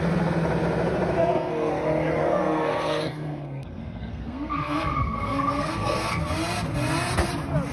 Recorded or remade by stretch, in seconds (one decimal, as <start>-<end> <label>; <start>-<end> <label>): 0.0-1.2 recorded; 1.2-1.7 remade; 1.7-2.2 recorded; 2.2-6.2 remade; 6.2-7.7 recorded